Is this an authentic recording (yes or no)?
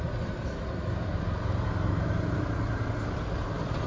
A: yes